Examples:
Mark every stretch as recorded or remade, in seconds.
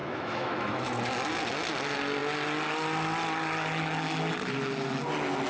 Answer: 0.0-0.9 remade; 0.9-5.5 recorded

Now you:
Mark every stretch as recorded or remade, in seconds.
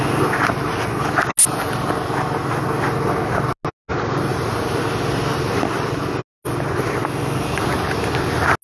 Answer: 0.0-4.3 recorded; 4.3-4.8 remade; 4.8-8.6 recorded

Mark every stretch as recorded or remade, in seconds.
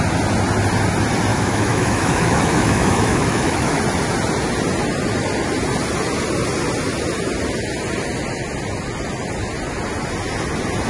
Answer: 0.0-1.3 recorded; 1.3-3.8 remade; 3.8-10.9 recorded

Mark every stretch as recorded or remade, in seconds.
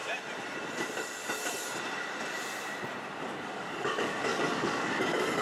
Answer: 0.0-3.2 recorded; 3.2-5.4 remade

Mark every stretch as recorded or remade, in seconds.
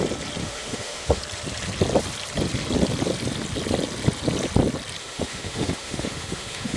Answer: 0.0-0.4 recorded; 0.4-1.2 remade; 1.2-5.0 recorded; 5.0-6.8 remade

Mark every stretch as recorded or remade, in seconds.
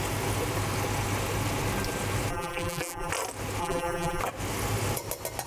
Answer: 0.0-2.3 recorded; 2.3-3.1 remade; 3.1-3.6 recorded; 3.6-4.2 remade; 4.2-5.5 recorded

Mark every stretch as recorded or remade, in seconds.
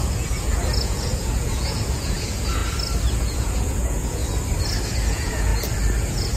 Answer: 0.0-2.6 remade; 2.6-3.2 recorded; 3.2-4.2 remade; 4.2-5.1 recorded; 5.1-5.5 remade; 5.5-6.0 recorded; 6.0-6.4 remade